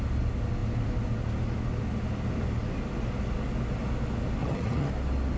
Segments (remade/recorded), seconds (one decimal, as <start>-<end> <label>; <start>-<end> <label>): 0.0-4.4 recorded; 4.4-4.9 remade; 4.9-5.4 recorded